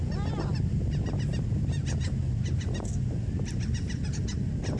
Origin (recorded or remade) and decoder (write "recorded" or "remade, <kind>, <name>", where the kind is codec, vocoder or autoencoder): recorded